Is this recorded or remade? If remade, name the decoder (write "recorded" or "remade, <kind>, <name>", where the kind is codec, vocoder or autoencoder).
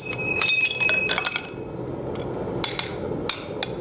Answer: recorded